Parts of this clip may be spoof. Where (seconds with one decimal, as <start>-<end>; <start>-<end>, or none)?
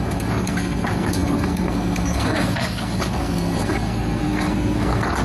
0.0-5.2